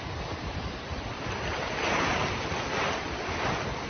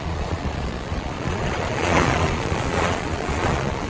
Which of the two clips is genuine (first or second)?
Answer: first